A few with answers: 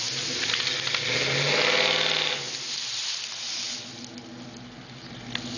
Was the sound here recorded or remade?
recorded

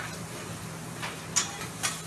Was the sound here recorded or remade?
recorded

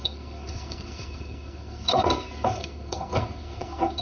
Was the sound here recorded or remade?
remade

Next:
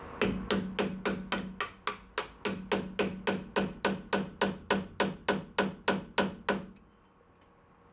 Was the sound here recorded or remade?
recorded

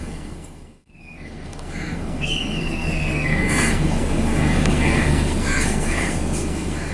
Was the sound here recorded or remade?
remade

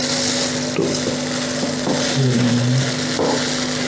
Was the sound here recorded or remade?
recorded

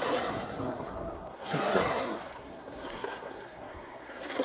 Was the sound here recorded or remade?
remade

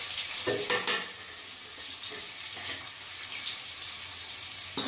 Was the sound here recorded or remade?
recorded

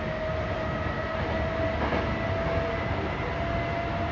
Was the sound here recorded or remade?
recorded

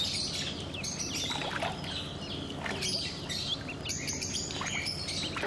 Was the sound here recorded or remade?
recorded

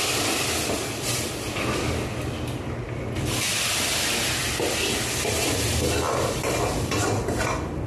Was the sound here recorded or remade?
recorded